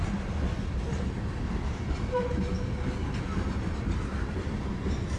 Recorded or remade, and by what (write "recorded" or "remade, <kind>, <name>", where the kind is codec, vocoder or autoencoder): recorded